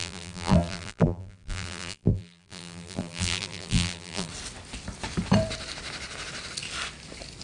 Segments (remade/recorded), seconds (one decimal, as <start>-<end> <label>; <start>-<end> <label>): 0.0-4.3 remade; 4.3-7.4 recorded